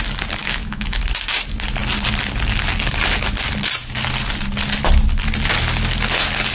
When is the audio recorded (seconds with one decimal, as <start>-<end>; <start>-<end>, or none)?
0.0-0.4; 1.0-6.5